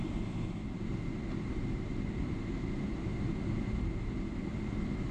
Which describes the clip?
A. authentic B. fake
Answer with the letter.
A